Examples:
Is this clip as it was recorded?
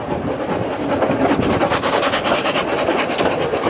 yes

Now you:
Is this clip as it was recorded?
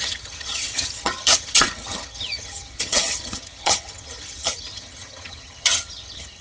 no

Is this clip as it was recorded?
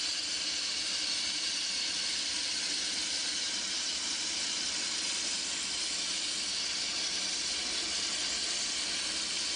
yes